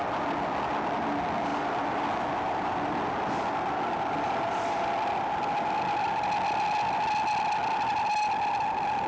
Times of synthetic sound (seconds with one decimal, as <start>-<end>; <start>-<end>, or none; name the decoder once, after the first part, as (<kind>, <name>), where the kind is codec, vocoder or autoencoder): none